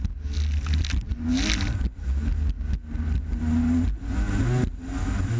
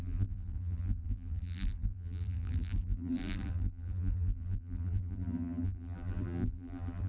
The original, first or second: first